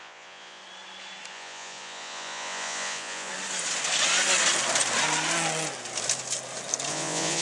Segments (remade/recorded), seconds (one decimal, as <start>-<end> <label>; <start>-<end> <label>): 0.0-0.6 remade; 0.6-1.3 recorded; 1.3-3.3 remade; 3.3-6.9 recorded; 6.9-7.4 remade